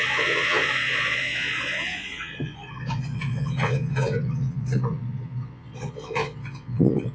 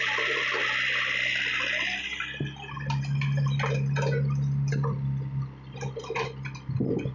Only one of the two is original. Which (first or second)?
second